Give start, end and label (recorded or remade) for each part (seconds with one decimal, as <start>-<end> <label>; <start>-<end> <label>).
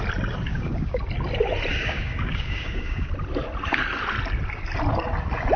0.0-0.5 recorded; 0.5-1.0 remade; 1.0-1.7 recorded; 1.7-3.1 remade; 3.1-5.6 recorded